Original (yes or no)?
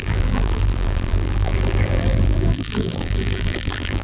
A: no